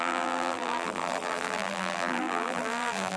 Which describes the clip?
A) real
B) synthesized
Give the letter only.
B